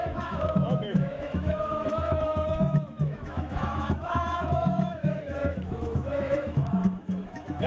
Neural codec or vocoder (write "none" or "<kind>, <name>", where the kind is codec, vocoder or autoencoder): autoencoder, DAC-VAE